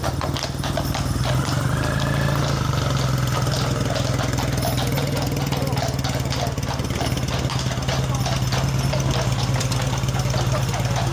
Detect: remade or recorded recorded